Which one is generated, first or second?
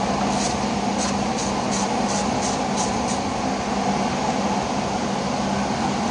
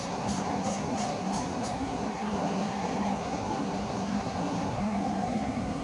second